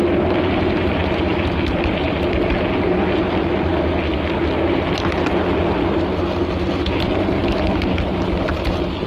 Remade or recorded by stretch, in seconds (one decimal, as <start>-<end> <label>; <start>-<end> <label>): 0.0-9.1 recorded